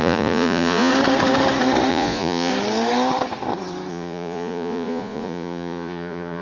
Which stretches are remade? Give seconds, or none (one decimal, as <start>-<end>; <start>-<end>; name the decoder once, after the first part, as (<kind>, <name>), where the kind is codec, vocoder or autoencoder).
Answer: 0.0-0.9 (vocoder, Vocos); 1.9-2.5; 3.9-6.4

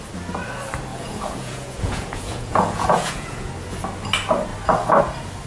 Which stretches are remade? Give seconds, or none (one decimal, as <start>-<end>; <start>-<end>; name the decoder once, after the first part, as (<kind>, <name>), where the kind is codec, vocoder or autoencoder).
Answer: 0.9-3.5 (vocoder, Vocos)

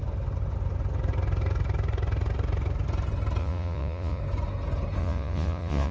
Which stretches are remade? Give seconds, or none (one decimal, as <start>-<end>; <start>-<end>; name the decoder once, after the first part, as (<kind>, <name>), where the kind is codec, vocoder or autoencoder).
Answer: 3.4-4.2 (vocoder, Vocos); 5.0-5.9

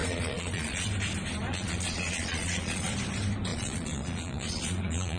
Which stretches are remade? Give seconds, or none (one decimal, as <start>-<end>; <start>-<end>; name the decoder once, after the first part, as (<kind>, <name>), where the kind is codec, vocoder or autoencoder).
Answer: 0.0-0.9 (vocoder, Vocos); 1.5-2.9; 3.5-5.2